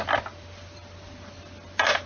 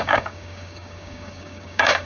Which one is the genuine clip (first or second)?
first